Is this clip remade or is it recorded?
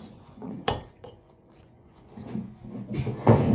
remade